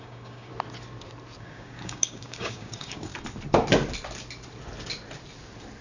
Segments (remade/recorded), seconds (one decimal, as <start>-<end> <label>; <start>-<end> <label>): 0.0-0.5 remade; 0.5-1.4 recorded; 1.4-3.1 remade; 3.1-5.8 recorded